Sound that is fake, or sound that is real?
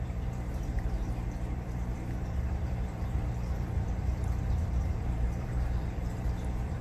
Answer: fake